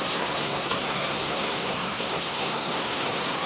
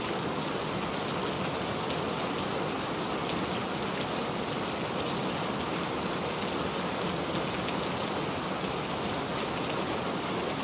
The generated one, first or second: first